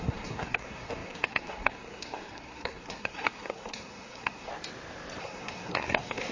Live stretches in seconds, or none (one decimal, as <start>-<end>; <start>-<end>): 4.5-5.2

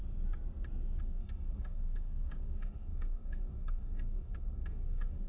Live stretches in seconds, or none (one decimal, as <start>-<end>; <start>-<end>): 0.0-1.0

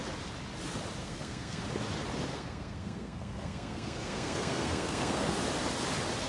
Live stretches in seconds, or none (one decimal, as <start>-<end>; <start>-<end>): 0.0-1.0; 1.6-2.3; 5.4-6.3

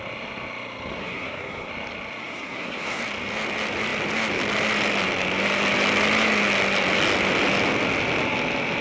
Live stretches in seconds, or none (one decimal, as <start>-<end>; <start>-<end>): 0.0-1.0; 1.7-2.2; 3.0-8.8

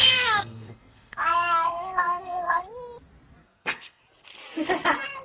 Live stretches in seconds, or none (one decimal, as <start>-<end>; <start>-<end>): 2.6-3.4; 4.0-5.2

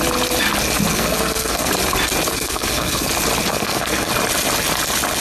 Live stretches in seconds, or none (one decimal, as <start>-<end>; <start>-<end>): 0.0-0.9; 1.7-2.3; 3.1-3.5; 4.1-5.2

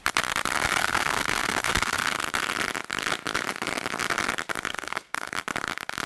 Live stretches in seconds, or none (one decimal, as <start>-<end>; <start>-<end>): 0.0-0.8; 2.2-4.7; 5.3-6.1